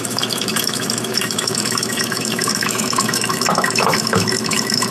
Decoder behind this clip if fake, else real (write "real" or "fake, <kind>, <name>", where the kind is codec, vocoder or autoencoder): fake, autoencoder, DAC-VAE